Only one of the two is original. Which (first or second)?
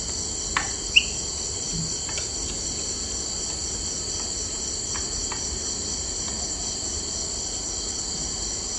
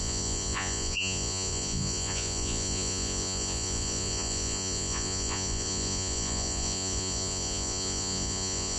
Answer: first